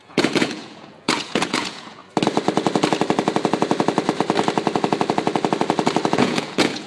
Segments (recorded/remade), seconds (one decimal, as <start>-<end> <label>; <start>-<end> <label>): 0.0-2.0 remade; 2.0-6.1 recorded; 6.1-6.9 remade